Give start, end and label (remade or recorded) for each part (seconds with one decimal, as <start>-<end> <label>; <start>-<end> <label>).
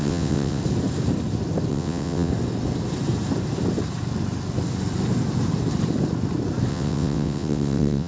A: 0.0-0.6 remade; 0.6-1.7 recorded; 1.7-2.3 remade; 2.3-6.7 recorded; 6.7-8.1 remade